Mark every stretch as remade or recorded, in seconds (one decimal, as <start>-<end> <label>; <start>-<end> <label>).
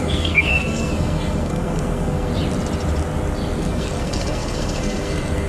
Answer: 0.0-2.3 remade; 2.3-3.6 recorded; 3.6-5.5 remade